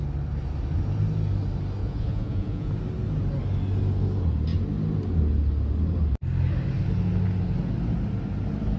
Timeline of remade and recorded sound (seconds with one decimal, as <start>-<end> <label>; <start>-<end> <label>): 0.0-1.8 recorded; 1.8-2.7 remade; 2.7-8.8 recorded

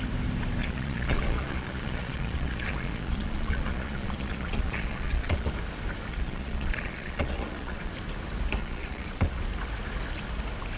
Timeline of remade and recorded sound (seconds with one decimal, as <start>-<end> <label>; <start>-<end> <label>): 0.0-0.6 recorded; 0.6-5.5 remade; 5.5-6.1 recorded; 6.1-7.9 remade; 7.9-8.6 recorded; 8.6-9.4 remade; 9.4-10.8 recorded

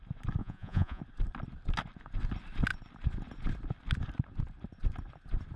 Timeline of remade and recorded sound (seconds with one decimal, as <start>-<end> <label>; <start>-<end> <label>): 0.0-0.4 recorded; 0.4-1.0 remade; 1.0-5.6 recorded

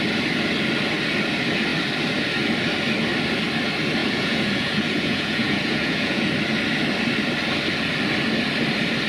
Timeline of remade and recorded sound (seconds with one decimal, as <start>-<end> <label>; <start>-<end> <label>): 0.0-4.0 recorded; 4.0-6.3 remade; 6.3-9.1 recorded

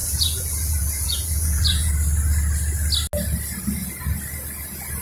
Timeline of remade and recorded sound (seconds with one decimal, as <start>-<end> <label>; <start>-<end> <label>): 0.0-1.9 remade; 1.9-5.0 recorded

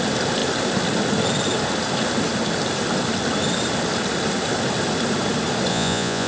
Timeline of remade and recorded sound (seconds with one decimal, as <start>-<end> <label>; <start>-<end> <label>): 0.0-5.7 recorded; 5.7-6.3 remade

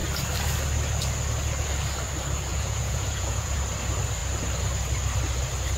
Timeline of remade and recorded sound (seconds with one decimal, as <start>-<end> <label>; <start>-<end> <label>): 0.0-2.5 recorded; 2.5-3.6 remade; 3.6-5.8 recorded